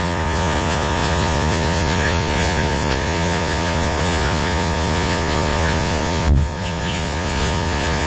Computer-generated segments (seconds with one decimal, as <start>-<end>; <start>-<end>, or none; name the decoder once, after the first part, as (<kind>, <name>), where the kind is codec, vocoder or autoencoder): 0.0-8.1 (vocoder, Vocos)